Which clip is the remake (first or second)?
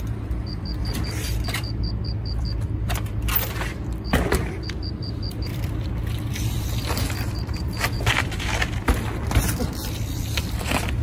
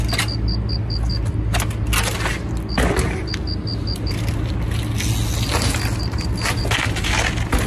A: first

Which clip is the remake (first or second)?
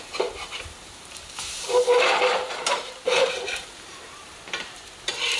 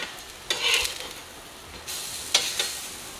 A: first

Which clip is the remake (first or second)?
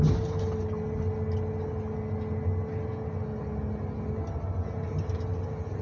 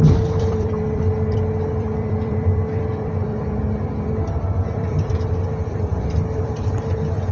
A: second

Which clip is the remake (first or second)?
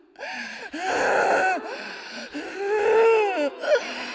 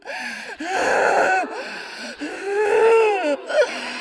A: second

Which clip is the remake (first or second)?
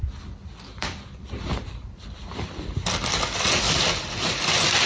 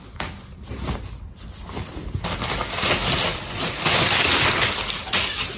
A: first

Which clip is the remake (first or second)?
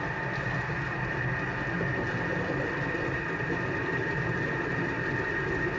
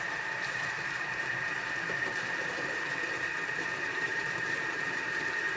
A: second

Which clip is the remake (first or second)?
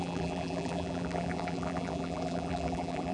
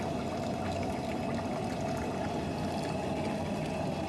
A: first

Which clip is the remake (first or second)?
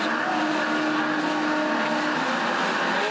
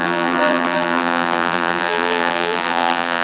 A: second